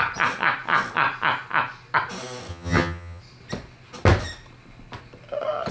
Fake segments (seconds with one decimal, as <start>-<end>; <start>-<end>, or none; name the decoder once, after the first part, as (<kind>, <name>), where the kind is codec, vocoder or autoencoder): 2.5-3.2 (vocoder, HiFi-GAN)